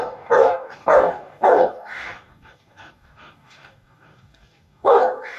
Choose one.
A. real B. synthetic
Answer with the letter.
B